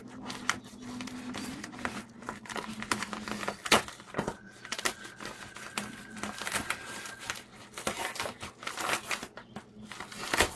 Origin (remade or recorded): recorded